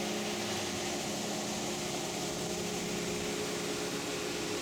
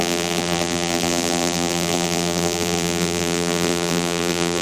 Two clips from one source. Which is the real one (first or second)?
first